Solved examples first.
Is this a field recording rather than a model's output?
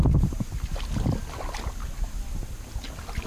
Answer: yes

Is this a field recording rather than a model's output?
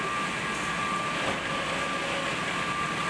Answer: yes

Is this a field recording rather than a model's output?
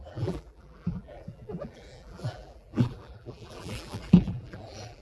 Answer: no